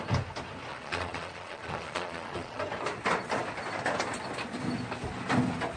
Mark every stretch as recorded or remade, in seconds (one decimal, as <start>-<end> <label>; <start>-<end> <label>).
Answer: 0.0-0.7 recorded; 0.7-2.6 remade; 2.6-5.8 recorded